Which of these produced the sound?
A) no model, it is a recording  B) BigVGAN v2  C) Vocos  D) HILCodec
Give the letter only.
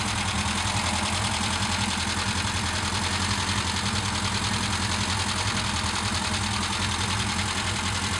A